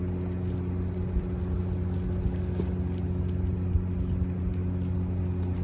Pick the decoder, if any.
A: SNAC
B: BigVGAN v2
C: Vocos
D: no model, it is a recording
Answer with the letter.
D